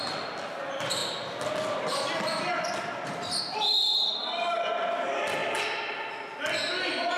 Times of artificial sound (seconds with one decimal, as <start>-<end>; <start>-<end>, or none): none

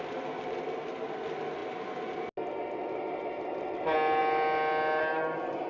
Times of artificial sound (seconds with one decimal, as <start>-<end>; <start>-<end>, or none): none

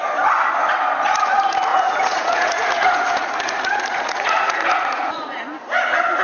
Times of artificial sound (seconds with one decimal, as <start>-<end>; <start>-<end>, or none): 1.7-5.4

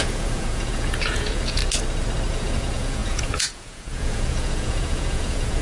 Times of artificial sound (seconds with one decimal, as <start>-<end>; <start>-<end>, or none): 0.0-1.6; 2.3-5.6

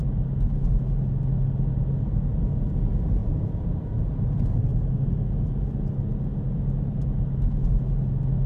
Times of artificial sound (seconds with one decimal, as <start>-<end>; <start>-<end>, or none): 3.2-4.1

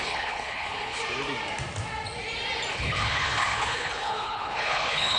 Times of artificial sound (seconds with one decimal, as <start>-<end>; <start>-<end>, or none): 0.0-1.0; 2.7-5.2

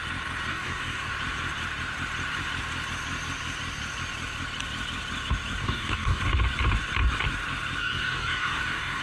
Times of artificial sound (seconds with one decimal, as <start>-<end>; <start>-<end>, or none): 0.5-1.1; 5.6-6.2; 7.8-9.0

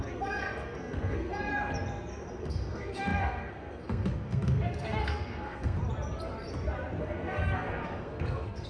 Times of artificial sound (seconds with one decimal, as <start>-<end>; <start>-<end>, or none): 0.0-1.5; 2.4-5.8; 7.0-8.7